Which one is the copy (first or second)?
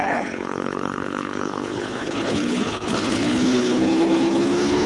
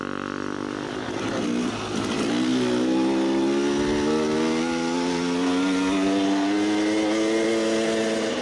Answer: first